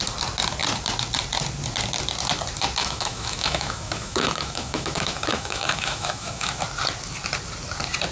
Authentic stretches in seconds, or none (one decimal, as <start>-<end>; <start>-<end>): 0.0-2.8; 6.6-8.1